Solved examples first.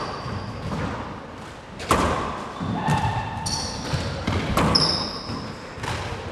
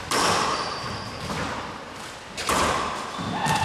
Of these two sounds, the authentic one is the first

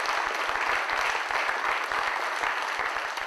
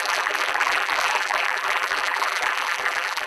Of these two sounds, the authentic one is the first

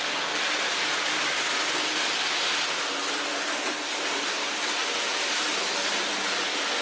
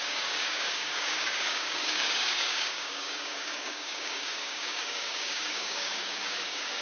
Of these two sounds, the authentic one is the first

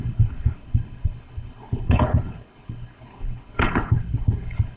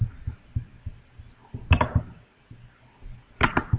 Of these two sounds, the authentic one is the second